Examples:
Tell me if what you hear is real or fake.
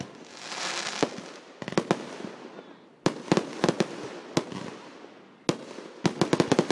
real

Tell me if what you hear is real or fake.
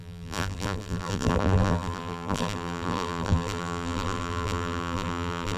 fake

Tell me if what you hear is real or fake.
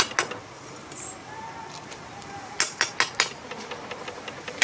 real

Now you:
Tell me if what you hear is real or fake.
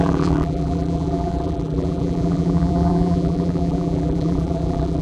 fake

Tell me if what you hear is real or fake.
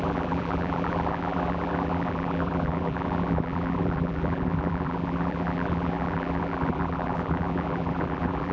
fake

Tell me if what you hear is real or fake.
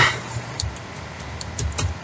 fake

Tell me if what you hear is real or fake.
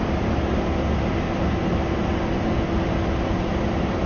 real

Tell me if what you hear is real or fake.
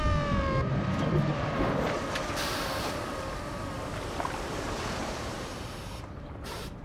fake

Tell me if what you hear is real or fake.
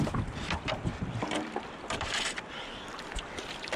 fake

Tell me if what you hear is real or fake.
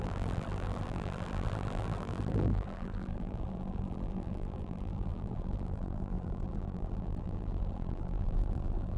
fake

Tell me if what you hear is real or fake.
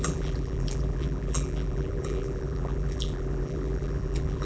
fake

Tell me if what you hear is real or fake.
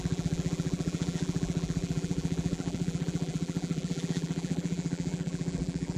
fake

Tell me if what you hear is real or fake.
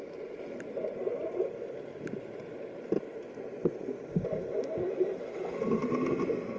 real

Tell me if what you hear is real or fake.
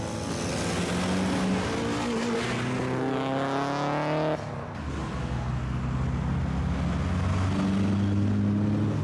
real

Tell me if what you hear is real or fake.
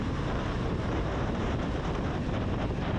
fake